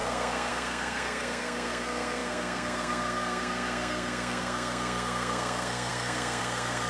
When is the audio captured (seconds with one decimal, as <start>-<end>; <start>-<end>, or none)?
none